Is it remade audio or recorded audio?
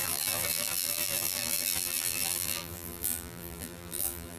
remade